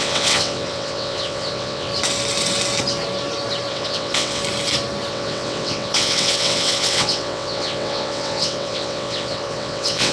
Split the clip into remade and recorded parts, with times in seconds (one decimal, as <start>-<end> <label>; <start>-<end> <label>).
0.0-1.9 remade; 1.9-3.7 recorded; 3.7-4.4 remade; 4.4-5.1 recorded; 5.1-10.1 remade

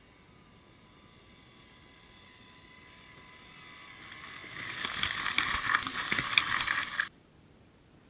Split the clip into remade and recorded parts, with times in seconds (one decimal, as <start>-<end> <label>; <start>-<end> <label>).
0.0-8.1 recorded

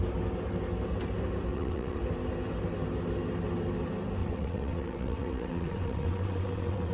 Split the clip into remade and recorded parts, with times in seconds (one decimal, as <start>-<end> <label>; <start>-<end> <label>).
0.0-1.5 recorded; 1.5-2.0 remade; 2.0-4.2 recorded; 4.2-6.9 remade

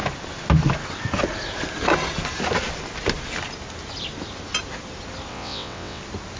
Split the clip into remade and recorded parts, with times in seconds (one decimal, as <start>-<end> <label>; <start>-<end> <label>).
0.0-5.3 recorded; 5.3-6.0 remade; 6.0-6.4 recorded

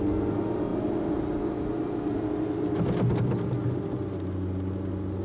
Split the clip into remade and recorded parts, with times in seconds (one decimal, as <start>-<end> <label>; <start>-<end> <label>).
0.0-5.2 recorded

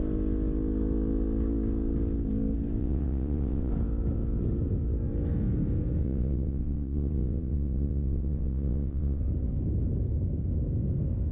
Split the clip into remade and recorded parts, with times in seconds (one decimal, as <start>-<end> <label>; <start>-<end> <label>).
0.0-2.8 recorded; 2.8-3.7 remade; 3.7-6.0 recorded; 6.0-9.2 remade; 9.2-11.3 recorded

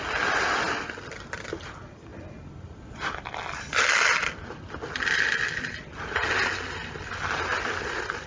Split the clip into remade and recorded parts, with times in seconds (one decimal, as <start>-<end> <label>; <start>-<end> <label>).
0.0-8.3 recorded

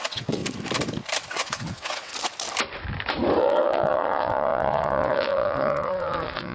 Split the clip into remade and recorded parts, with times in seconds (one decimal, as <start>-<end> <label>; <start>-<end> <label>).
0.0-0.4 remade; 0.4-1.3 recorded; 1.3-2.1 remade; 2.1-3.4 recorded; 3.4-6.5 remade